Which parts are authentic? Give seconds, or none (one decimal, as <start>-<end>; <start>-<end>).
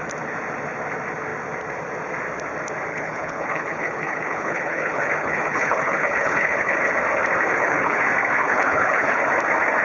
0.0-2.9; 6.9-7.5; 8.0-8.4; 9.2-9.8